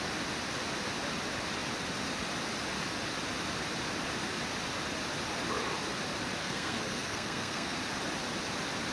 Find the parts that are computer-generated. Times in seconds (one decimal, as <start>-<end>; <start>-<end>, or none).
6.4-7.8